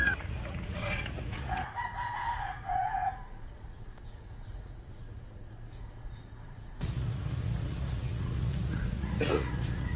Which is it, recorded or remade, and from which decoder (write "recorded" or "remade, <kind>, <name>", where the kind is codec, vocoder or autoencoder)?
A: remade, vocoder, Vocos